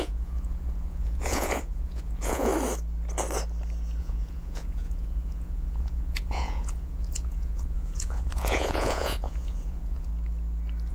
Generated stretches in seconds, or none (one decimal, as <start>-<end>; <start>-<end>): 0.0-2.5; 4.0-10.1